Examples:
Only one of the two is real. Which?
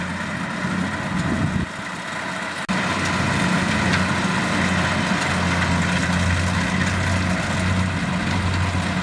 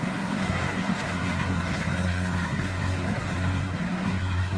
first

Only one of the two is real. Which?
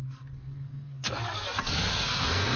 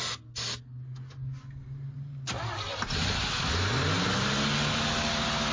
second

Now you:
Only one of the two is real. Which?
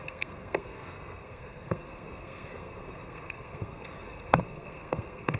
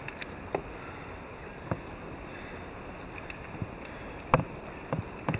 second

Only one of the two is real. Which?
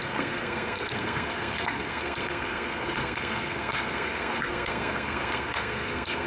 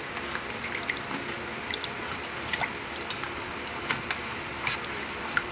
second